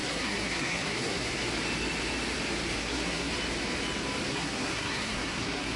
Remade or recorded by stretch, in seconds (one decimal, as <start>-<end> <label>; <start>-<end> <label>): 0.0-1.5 remade; 1.5-2.8 recorded; 2.8-3.3 remade; 3.3-4.3 recorded; 4.3-5.8 remade